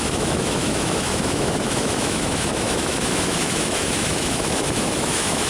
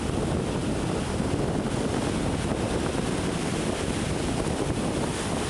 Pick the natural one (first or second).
second